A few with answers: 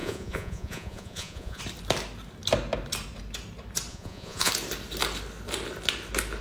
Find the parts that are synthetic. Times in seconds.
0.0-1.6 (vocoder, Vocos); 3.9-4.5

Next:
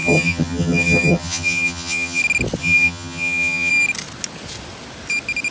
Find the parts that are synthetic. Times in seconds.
0.0-2.2 (vocoder, HiFi-GAN); 2.6-3.7

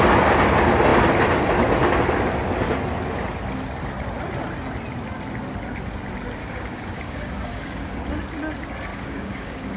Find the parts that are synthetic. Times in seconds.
6.4-8.1 (codec, DAC); 8.9-9.8

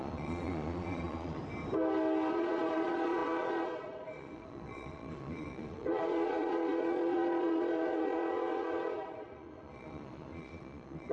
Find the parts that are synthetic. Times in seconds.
0.0-1.4 (vocoder, Vocos); 2.3-11.1

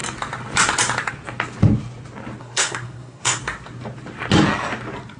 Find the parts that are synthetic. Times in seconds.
2.4-3.4 (codec, SNAC)

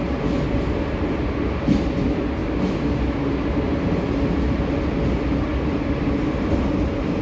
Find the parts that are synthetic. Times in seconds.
none

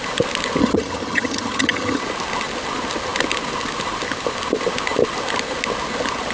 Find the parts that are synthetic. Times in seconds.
0.6-2.0 (vocoder, HiFi-GAN)